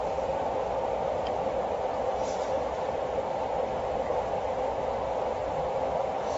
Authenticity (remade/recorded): recorded